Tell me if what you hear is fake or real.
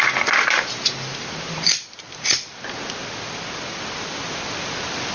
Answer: real